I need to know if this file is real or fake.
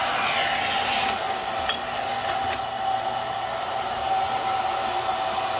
real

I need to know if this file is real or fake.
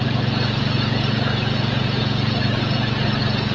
fake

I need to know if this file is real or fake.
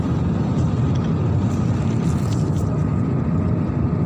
real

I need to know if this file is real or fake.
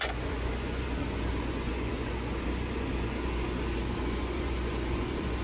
fake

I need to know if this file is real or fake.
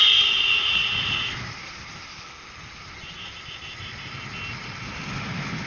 real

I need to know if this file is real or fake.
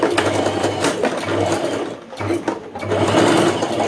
real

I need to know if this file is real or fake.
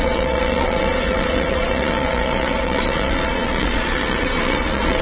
fake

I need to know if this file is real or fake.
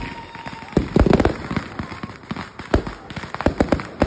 real